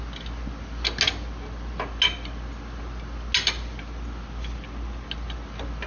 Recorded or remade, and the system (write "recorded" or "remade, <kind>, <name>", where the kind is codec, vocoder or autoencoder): recorded